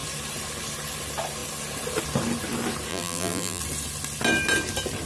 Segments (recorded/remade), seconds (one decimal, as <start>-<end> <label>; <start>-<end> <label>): 0.0-2.9 recorded; 2.9-3.6 remade; 3.6-5.1 recorded